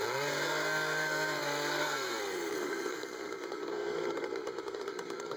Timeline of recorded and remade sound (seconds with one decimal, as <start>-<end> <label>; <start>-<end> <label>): 0.0-5.4 remade